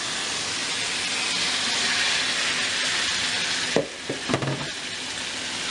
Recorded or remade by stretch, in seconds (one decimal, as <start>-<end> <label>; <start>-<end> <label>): 0.0-5.7 recorded